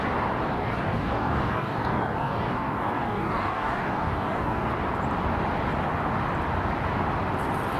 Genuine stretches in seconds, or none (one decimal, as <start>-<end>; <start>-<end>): 0.0-0.6; 4.7-7.8

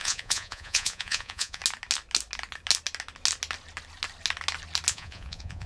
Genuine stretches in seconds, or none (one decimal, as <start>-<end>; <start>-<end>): 1.6-4.9